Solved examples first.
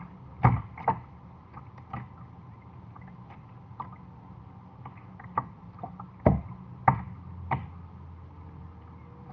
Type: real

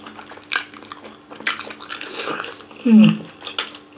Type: real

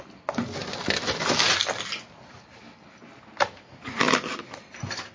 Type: real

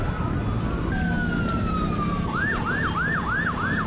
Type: real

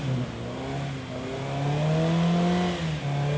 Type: real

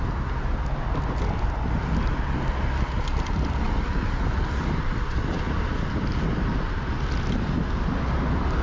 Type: real